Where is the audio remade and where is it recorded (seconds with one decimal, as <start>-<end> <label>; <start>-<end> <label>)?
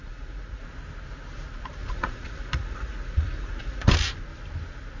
0.0-0.6 remade; 0.6-1.8 recorded; 1.8-3.9 remade; 3.9-5.0 recorded